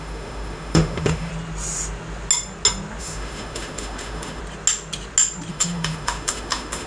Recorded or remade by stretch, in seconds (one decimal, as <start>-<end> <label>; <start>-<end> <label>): 0.0-1.3 remade; 1.3-3.0 recorded; 3.0-4.4 remade; 4.4-5.5 recorded; 5.5-6.9 remade